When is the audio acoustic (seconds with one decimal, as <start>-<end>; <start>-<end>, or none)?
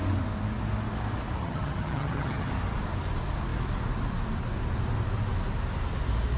0.0-1.4; 2.5-6.4